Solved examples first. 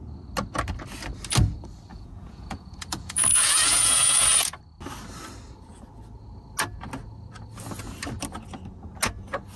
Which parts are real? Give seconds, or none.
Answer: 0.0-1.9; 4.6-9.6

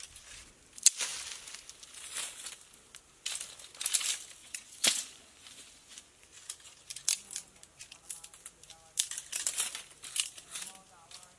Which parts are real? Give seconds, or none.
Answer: 0.0-4.4; 6.1-11.4

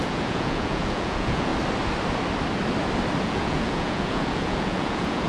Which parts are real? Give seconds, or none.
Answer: 1.5-3.2

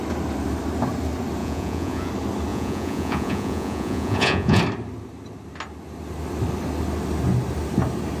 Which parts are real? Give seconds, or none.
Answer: 0.0-1.4; 2.1-2.5; 4.6-8.2

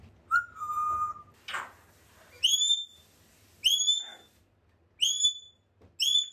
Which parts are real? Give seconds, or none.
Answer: 0.0-6.3